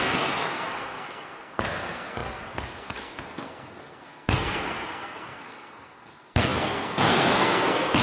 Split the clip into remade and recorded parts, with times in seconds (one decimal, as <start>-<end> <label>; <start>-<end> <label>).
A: 0.0-8.0 remade